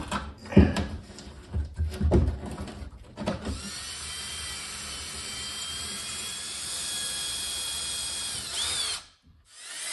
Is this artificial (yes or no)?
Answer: yes